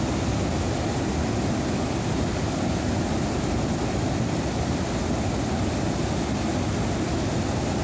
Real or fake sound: real